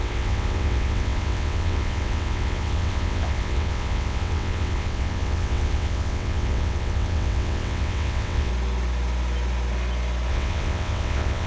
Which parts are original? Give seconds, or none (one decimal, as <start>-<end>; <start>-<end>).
8.5-10.3